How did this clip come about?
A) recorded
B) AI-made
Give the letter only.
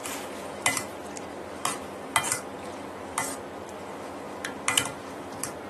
A